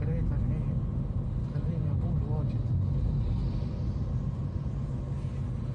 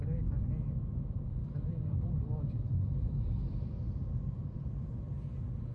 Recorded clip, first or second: first